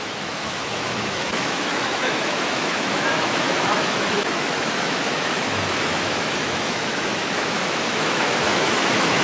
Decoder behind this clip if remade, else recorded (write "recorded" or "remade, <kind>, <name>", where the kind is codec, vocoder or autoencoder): remade, autoencoder, DAC-VAE